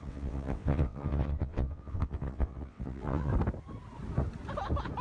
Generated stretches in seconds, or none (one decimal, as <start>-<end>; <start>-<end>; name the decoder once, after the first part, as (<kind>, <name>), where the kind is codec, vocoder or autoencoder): 0.0-3.3 (vocoder, WaveNeXt)

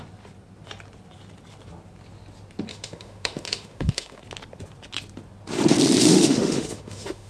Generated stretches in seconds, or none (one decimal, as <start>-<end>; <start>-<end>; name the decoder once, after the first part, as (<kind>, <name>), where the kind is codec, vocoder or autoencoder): 2.7-4.2 (autoencoder, DAC-VAE); 6.1-7.3